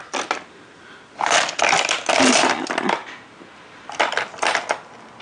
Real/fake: real